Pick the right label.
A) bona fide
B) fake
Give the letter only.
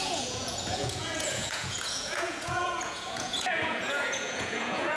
B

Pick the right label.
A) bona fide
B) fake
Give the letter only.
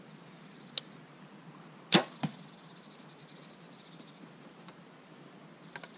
A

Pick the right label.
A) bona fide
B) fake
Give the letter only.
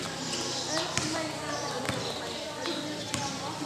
A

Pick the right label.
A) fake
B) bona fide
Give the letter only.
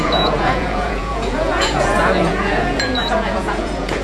A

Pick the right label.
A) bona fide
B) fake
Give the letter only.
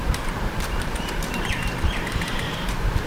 B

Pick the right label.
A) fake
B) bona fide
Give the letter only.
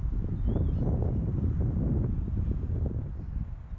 B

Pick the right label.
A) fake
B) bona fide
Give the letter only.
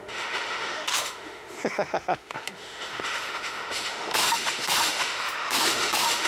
A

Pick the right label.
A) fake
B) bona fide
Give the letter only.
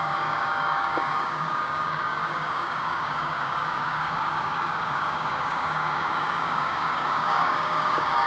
A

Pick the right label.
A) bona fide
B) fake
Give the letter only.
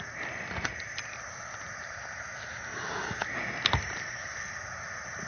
A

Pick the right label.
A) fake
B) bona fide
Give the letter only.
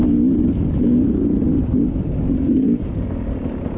B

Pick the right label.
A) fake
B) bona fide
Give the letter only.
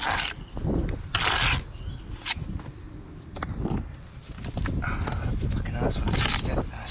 B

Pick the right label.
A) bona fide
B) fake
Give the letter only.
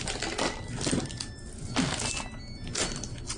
A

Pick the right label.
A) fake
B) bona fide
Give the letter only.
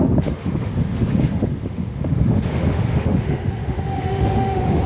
A